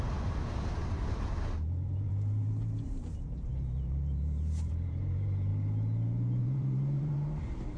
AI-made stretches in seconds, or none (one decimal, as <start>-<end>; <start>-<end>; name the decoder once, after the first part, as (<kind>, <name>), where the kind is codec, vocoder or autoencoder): 0.0-5.5 (vocoder, BigVGAN v2); 6.4-7.8